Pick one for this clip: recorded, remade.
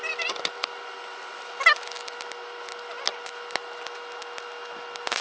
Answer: recorded